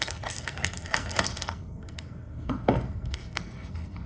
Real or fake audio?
fake